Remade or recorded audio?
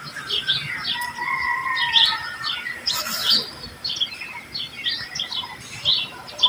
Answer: recorded